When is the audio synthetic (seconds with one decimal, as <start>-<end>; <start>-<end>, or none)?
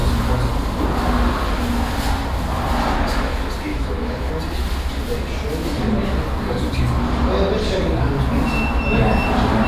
3.7-4.3